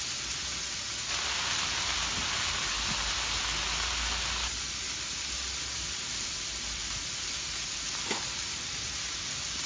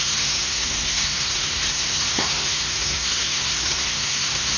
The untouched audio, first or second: first